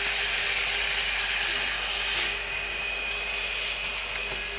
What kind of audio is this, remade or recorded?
recorded